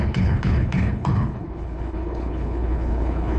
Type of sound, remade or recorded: remade